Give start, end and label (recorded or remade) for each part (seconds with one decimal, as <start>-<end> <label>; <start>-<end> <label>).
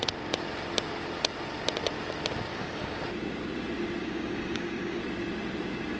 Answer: 0.0-2.5 recorded; 2.5-3.0 remade; 3.0-4.0 recorded; 4.0-5.0 remade; 5.0-6.0 recorded